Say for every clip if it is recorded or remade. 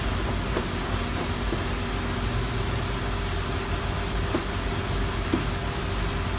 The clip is recorded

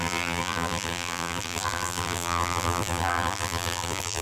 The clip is remade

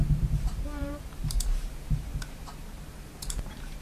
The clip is remade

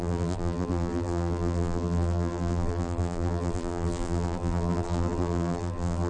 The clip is remade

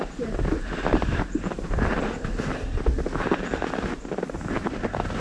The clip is recorded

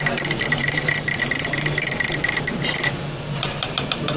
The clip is remade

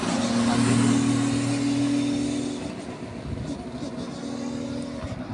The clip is recorded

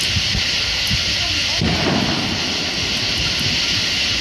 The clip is recorded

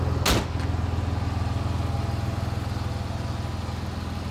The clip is recorded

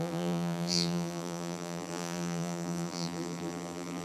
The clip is remade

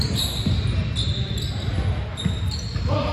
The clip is recorded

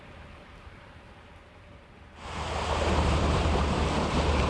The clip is remade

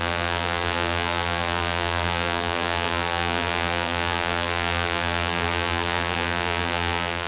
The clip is remade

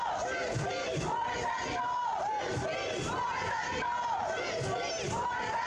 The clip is recorded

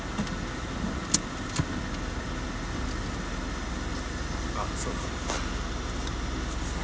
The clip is recorded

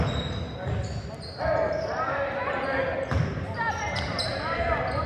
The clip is recorded